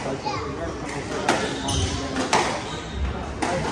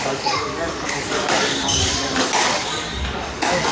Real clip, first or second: first